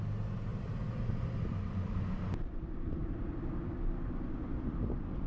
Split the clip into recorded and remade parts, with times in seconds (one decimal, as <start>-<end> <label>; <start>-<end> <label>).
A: 0.0-0.5 recorded; 0.5-1.0 remade; 1.0-3.0 recorded; 3.0-3.6 remade; 3.6-5.3 recorded